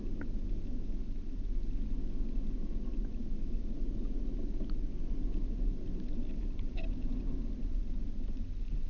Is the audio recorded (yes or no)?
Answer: yes